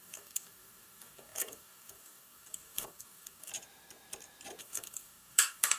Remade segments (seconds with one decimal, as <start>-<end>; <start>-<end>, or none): 0.0-3.5; 4.6-5.8